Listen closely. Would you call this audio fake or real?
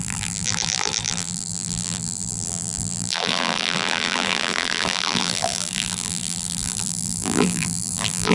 fake